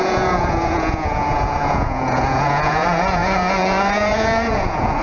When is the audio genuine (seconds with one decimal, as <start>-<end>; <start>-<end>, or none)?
none